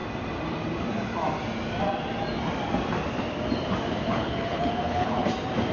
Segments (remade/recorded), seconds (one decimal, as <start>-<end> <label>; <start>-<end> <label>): 0.0-4.1 recorded; 4.1-5.3 remade; 5.3-5.7 recorded